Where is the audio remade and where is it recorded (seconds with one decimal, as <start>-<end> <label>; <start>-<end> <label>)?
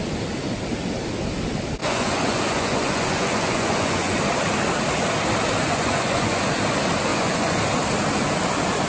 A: 0.0-1.8 recorded; 1.8-4.2 remade; 4.2-5.6 recorded; 5.6-6.4 remade; 6.4-7.1 recorded; 7.1-7.6 remade; 7.6-8.9 recorded